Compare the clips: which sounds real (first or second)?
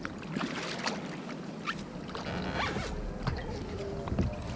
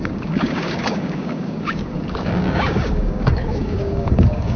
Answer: first